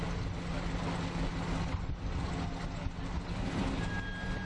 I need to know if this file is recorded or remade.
recorded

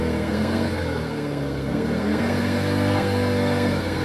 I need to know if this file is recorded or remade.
remade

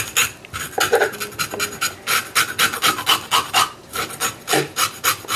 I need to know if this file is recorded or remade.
recorded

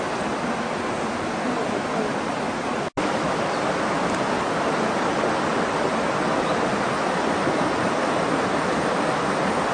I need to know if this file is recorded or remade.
recorded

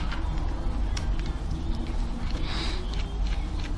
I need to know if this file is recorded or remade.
recorded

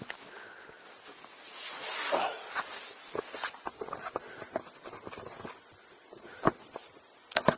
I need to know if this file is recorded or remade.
recorded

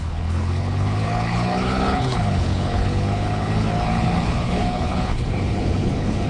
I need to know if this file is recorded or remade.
remade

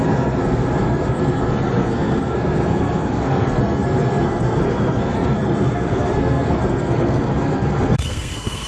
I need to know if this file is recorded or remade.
remade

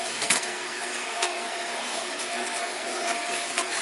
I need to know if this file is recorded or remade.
remade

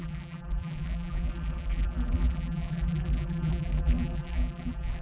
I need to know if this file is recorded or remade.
remade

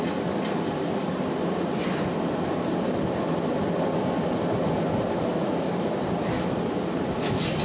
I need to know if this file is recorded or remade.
recorded